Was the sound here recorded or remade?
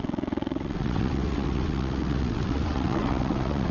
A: remade